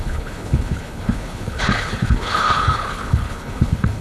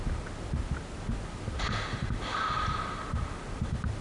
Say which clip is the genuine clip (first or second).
second